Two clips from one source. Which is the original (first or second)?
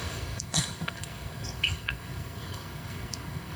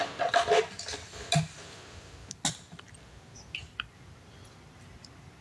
second